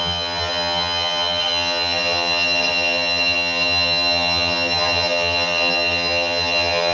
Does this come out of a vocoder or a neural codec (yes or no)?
yes